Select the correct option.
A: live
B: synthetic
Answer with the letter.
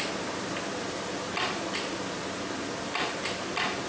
A